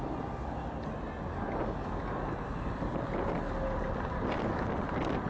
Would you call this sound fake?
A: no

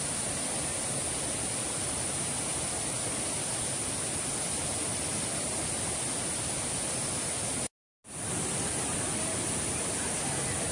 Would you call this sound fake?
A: no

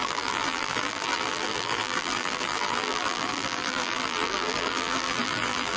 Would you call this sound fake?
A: yes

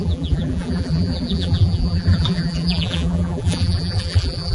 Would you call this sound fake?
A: yes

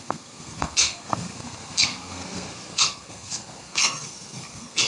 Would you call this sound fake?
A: yes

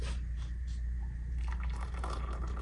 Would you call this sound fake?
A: yes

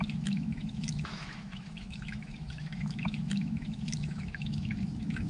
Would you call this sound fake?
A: yes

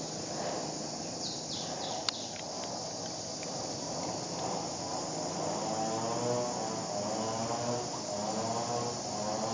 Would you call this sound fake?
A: no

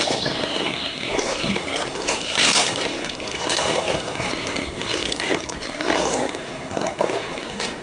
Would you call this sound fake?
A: yes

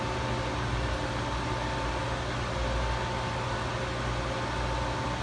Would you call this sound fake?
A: no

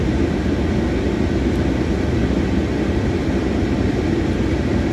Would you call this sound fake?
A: no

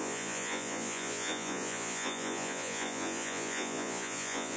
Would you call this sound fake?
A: yes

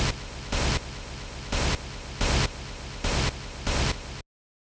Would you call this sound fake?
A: no